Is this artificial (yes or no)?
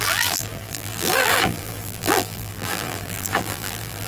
yes